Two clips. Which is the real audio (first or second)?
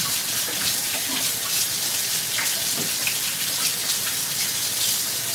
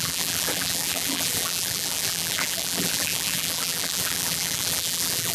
first